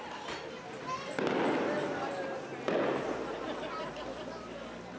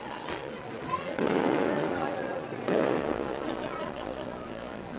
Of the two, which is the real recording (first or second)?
first